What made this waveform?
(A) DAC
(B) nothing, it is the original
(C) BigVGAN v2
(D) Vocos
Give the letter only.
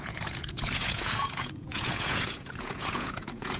D